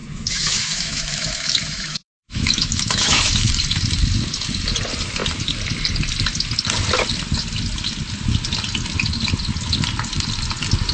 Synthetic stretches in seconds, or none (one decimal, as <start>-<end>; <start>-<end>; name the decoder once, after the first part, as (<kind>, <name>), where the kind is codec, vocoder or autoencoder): 0.0-3.5 (autoencoder, DAC-VAE)